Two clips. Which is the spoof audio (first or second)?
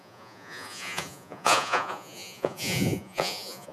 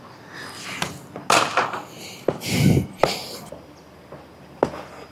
first